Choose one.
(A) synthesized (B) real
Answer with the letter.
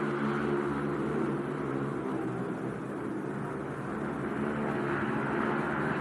B